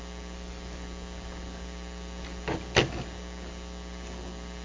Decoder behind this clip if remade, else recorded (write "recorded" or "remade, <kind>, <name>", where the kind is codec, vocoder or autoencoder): recorded